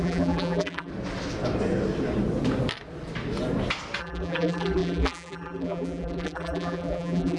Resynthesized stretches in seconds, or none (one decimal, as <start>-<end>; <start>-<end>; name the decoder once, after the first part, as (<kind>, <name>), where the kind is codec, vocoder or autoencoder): 0.0-0.9 (vocoder, BigVGAN v2); 4.0-7.4